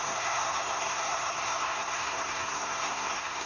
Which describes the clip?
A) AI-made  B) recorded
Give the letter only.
A